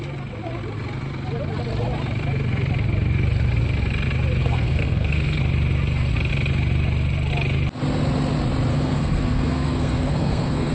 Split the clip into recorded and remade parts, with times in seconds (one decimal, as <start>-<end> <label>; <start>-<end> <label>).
0.0-4.4 recorded; 4.4-5.4 remade; 5.4-8.7 recorded; 8.7-10.7 remade